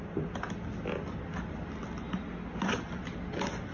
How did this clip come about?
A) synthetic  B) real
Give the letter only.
B